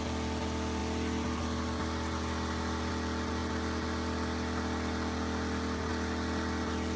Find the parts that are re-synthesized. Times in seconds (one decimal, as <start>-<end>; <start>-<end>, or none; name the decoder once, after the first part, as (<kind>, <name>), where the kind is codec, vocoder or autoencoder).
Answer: none